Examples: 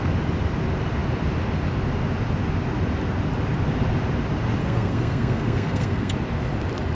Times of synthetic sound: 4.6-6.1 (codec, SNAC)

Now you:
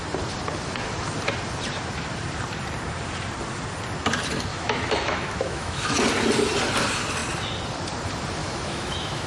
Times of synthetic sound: 4.5-6.0 (autoencoder, DAC-VAE); 8.4-9.3

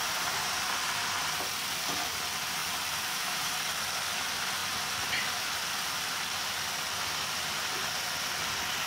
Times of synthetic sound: 2.6-3.6 (vocoder, BigVGAN v2)

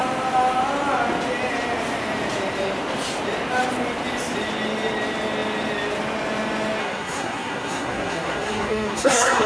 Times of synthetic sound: 6.8-9.5 (codec, SNAC)

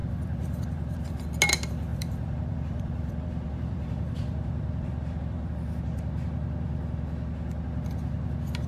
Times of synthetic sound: 0.0-1.2 (vocoder, BigVGAN v2); 1.9-5.5